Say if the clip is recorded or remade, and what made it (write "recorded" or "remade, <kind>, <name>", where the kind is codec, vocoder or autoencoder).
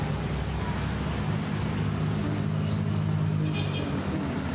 recorded